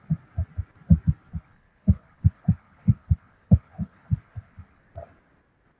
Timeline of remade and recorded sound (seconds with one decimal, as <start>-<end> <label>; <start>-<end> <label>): 0.0-1.3 recorded; 1.3-4.8 remade; 4.8-5.8 recorded